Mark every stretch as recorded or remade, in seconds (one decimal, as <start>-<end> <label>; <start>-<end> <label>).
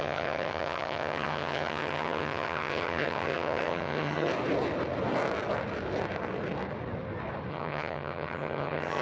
0.0-4.3 remade; 4.3-7.5 recorded; 7.5-9.0 remade